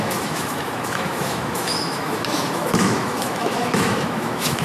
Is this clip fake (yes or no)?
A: yes